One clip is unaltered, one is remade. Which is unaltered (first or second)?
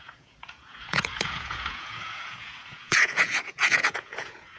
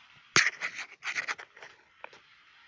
second